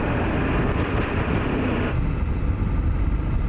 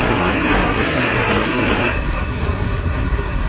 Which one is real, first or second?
first